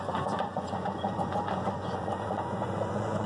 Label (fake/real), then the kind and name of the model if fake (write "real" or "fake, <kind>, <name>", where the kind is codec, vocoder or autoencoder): fake, vocoder, Vocos